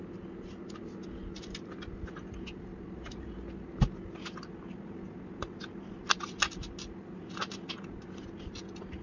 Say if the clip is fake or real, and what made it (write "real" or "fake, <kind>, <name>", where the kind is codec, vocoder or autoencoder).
real